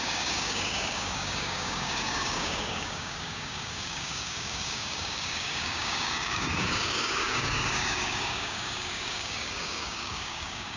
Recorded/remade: remade